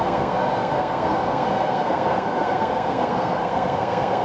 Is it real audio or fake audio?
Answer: fake